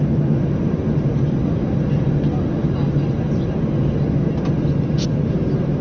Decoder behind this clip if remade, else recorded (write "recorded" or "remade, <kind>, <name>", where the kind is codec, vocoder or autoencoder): recorded